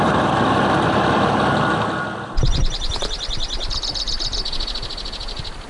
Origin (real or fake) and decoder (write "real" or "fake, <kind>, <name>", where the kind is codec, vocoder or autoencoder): real